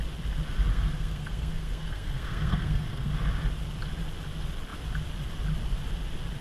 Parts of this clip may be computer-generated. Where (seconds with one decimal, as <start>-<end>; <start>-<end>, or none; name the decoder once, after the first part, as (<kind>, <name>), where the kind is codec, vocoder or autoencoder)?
0.7-3.1 (codec, SNAC)